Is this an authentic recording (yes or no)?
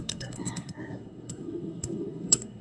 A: no